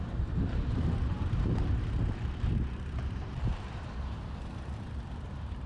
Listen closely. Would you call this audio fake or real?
fake